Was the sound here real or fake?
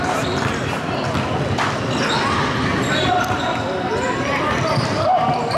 real